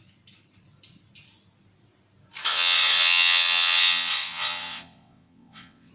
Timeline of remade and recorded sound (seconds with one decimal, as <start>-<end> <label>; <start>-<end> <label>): 0.0-2.5 recorded; 2.5-5.9 remade